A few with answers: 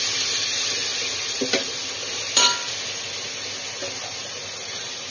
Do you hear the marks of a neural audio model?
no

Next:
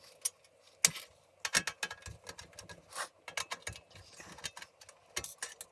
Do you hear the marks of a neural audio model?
no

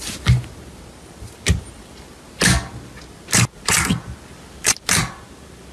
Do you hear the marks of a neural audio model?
no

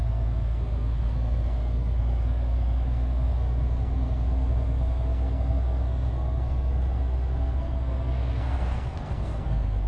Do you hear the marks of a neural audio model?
yes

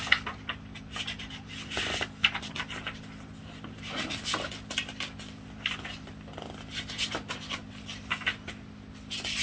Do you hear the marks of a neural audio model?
no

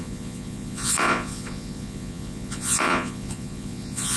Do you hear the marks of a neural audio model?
yes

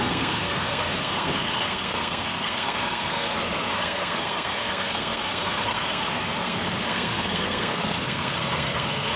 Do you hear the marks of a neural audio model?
yes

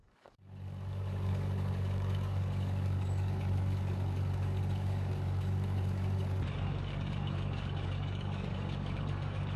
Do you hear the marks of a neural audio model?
yes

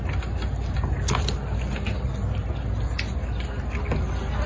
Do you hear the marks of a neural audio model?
no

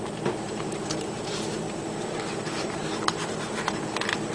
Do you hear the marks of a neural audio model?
yes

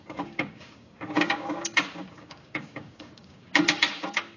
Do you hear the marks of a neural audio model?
yes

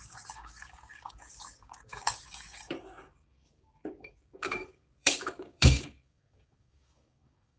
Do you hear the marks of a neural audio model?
yes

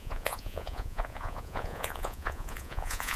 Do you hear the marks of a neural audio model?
yes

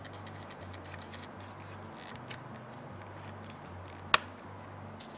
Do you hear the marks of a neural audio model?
no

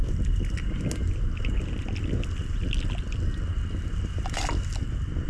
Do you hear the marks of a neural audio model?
no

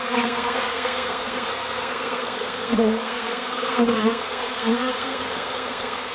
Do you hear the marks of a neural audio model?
yes